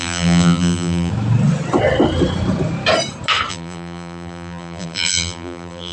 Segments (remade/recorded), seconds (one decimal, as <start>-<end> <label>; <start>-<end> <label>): 0.0-1.1 remade; 1.1-3.5 recorded; 3.5-5.9 remade